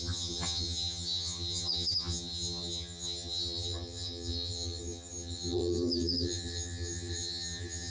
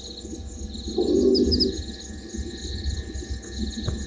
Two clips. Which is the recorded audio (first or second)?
second